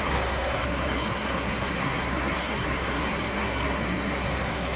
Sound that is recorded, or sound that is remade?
remade